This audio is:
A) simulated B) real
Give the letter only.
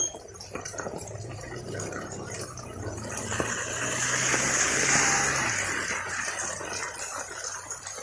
B